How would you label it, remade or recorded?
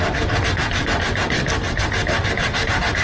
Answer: recorded